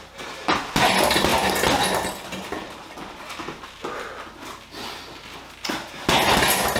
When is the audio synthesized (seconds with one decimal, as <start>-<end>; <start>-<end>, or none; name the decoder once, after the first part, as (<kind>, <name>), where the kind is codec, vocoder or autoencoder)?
none